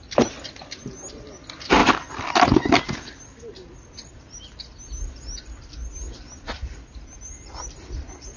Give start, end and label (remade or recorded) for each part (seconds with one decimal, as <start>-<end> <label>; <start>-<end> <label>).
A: 0.0-8.4 recorded